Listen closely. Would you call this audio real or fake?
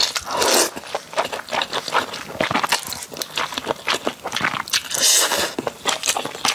real